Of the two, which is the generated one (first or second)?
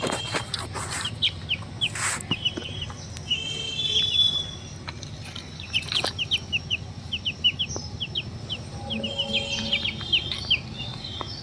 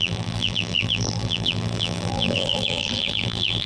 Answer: second